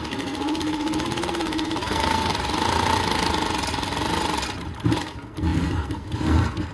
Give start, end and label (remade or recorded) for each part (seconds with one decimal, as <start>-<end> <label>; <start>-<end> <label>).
0.0-2.3 remade; 2.3-5.0 recorded; 5.0-6.7 remade